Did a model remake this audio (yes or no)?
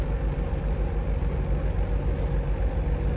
no